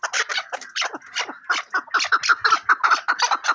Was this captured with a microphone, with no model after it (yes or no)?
yes